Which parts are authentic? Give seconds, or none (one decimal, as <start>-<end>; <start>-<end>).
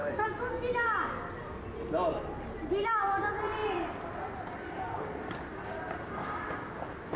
0.0-7.2